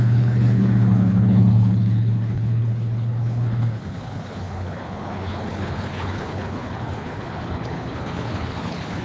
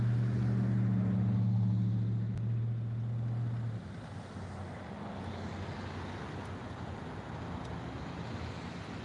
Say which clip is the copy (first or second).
first